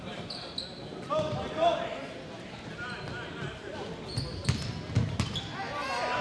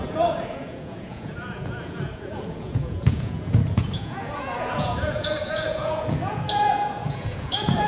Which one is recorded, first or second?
first